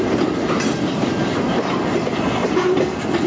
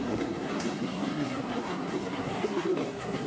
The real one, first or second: first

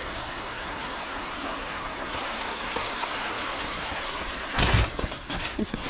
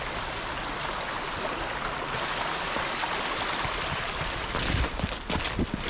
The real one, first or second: second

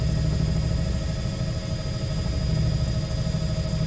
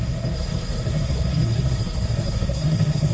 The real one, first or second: first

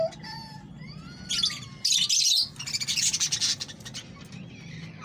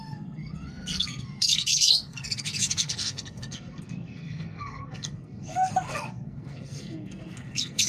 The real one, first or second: first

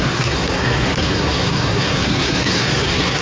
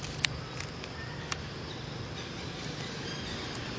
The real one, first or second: second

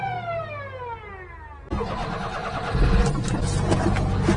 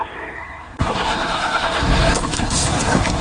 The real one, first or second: first